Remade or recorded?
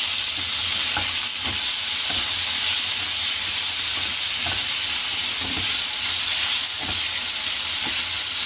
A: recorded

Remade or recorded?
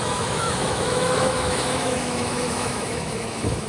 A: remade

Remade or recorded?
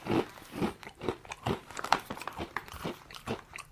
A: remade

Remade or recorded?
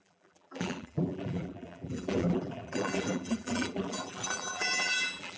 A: remade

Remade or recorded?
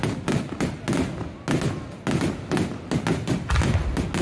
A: recorded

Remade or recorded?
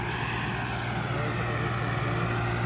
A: recorded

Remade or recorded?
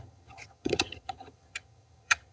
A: remade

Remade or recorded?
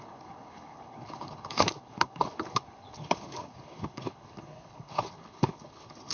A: remade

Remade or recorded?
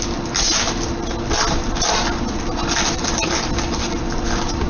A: recorded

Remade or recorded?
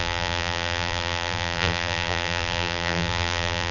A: remade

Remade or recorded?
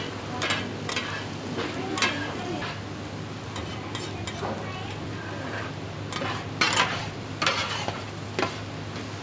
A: recorded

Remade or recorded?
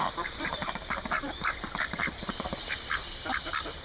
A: remade